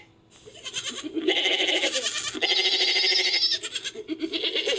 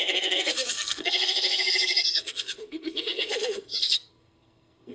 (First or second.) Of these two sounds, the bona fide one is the first